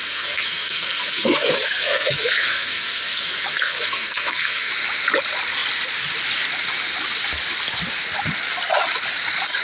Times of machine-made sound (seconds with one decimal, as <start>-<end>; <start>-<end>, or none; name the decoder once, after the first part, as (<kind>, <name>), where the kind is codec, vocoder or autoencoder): 0.0-4.7 (codec, SNAC)